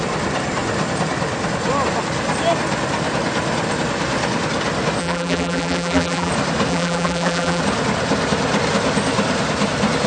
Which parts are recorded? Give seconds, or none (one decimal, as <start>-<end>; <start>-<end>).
0.0-5.0; 6.3-6.7; 7.6-10.1